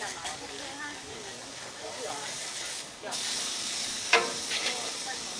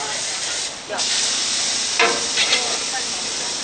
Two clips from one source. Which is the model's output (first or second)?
first